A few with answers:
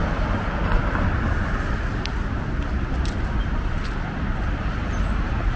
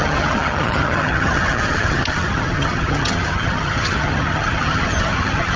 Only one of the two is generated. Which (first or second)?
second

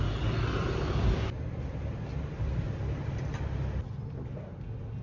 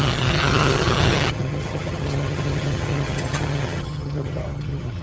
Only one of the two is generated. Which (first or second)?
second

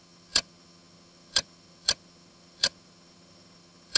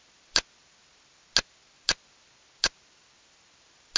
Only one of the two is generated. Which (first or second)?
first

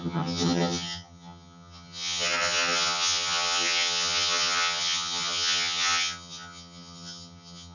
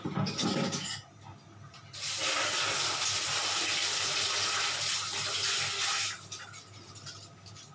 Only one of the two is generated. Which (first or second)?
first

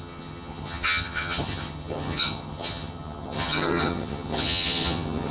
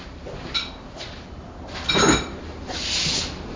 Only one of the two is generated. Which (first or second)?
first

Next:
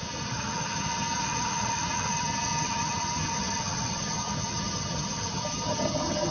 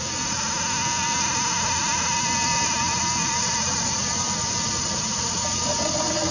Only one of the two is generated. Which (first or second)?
first